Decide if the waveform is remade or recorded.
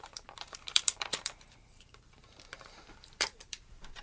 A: remade